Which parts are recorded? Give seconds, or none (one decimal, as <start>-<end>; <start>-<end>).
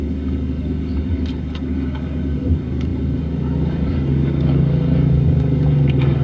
none